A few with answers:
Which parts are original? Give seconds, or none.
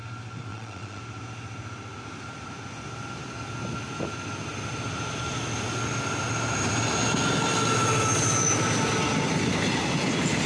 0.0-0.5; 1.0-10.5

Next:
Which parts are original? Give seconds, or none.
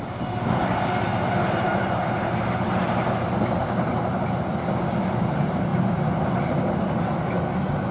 0.0-7.9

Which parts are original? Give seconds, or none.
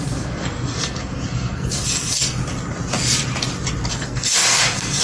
2.4-3.9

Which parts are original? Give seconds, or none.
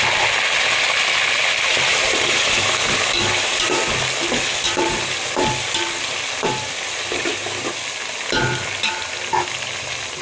0.0-1.7; 3.8-10.2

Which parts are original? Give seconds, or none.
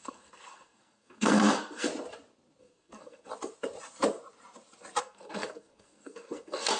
1.9-2.6; 3.3-5.0